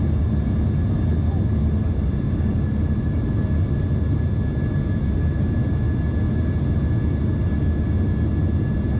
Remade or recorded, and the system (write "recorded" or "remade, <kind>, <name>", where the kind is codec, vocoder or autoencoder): recorded